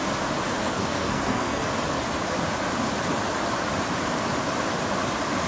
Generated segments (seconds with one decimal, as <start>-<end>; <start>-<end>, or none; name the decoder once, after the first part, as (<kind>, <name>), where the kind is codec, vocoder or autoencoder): 0.6-1.7 (codec, SNAC)